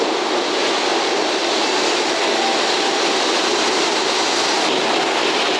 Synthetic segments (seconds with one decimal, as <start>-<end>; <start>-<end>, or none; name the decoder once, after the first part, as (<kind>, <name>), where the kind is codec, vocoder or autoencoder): none